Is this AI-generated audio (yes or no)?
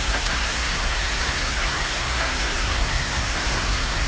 yes